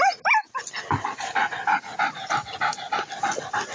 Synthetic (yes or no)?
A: no